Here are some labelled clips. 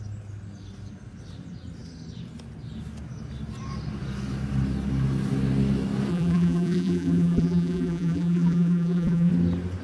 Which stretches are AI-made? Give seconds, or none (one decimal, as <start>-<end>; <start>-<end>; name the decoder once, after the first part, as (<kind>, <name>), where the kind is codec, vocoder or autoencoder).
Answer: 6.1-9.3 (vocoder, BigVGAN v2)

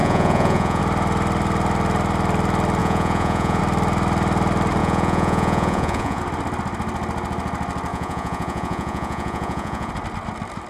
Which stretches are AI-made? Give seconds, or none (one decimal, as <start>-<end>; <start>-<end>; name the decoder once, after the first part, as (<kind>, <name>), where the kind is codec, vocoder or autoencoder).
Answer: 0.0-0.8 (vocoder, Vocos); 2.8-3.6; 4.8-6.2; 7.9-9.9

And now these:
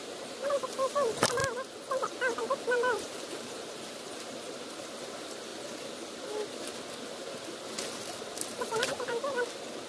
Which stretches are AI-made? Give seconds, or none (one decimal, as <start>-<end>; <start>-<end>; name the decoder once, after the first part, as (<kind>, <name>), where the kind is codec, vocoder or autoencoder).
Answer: 0.0-1.4 (vocoder, BigVGAN v2); 2.4-5.5; 8.3-9.2

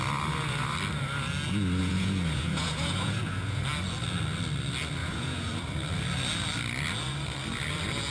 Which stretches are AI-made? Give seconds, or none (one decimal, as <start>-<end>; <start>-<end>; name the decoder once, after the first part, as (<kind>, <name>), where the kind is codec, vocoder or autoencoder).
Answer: 1.8-3.6 (vocoder, Vocos); 5.0-5.5

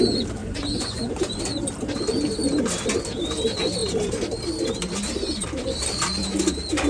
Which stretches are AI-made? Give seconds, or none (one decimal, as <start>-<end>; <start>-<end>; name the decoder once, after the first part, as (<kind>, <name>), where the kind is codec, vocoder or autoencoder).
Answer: 0.4-1.4 (vocoder, Vocos)

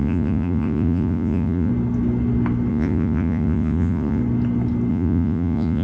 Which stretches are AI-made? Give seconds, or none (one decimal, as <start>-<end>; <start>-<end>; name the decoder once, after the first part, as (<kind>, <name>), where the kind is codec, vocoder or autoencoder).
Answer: 0.0-1.7 (vocoder, Vocos); 2.7-4.2; 4.9-5.8

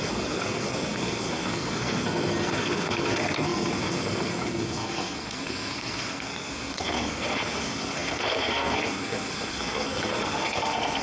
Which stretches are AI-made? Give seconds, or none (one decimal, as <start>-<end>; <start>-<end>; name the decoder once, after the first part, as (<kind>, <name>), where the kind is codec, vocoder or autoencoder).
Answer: 0.0-11.0 (codec, SNAC)

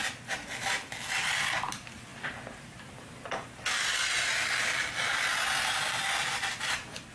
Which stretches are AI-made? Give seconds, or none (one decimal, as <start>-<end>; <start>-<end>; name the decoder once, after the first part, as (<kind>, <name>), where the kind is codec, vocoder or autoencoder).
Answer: none